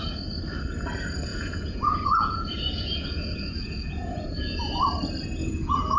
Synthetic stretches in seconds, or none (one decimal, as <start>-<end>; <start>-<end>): 1.3-4.8; 5.4-6.0